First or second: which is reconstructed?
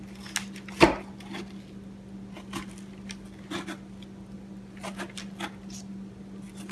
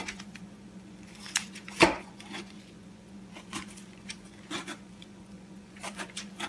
second